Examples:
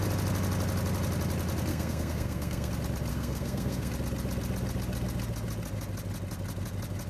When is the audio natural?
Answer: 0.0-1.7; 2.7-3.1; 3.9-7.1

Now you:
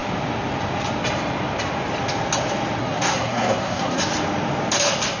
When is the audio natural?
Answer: 0.0-2.8; 4.0-5.2

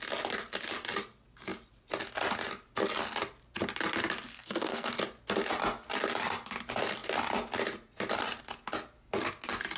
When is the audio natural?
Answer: 0.0-4.3; 4.9-9.8

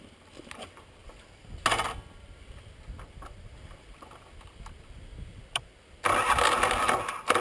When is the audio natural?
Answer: 0.0-7.4